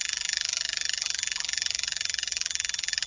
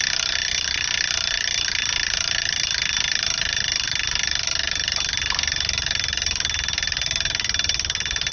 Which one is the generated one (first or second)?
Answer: first